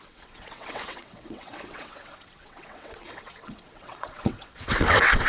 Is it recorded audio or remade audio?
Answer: remade